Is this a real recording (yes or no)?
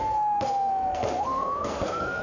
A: no